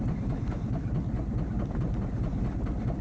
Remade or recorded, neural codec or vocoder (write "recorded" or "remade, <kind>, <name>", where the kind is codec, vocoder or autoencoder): recorded